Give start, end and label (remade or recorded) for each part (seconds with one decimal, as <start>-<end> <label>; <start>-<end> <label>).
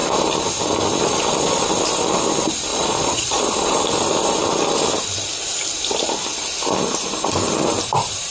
0.0-2.7 recorded; 2.7-3.4 remade; 3.4-8.3 recorded